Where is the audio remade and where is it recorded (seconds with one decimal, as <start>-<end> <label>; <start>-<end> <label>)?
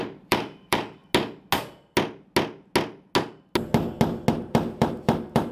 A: 0.0-1.0 remade; 1.0-4.3 recorded; 4.3-5.5 remade